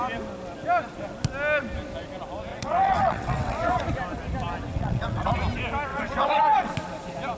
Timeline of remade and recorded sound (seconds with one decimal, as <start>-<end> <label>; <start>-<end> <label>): 0.0-2.5 recorded; 2.5-3.8 remade; 3.8-4.7 recorded; 4.7-5.3 remade; 5.3-5.9 recorded; 5.9-6.7 remade; 6.7-7.4 recorded